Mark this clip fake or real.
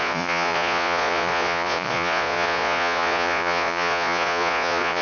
fake